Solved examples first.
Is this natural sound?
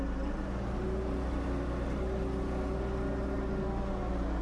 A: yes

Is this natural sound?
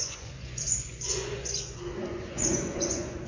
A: no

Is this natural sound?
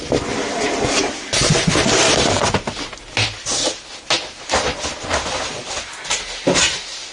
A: yes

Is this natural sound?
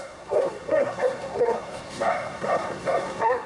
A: no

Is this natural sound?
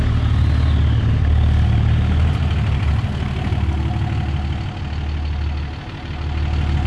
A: yes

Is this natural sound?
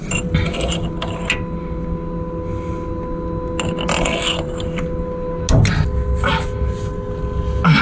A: yes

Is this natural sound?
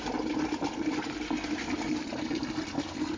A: yes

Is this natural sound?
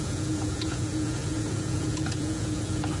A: no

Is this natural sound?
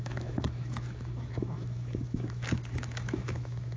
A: no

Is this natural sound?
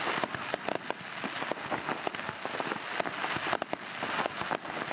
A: yes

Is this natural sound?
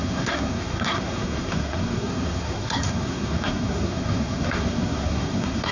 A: no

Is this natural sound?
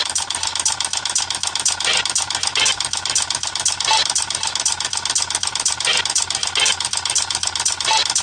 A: yes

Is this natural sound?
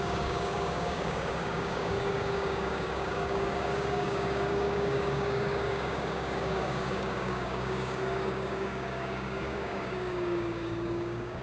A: no